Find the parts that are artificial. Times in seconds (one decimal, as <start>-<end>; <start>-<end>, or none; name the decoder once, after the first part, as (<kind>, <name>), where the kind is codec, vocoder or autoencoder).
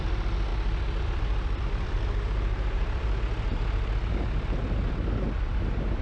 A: 0.5-4.1 (vocoder, BigVGAN v2)